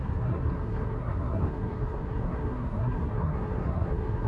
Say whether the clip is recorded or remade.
remade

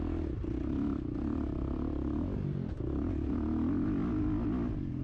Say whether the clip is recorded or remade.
recorded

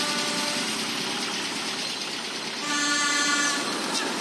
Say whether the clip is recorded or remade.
recorded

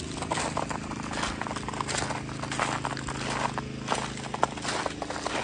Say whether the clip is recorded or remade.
recorded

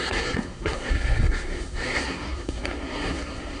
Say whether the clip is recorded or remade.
remade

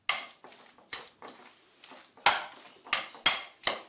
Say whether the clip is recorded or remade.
recorded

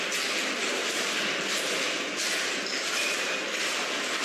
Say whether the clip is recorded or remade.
recorded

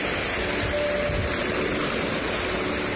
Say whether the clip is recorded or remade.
recorded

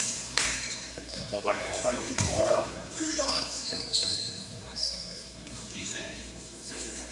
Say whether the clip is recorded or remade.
remade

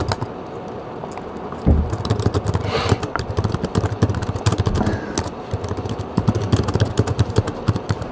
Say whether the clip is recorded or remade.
recorded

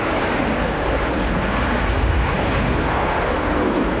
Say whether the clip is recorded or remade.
recorded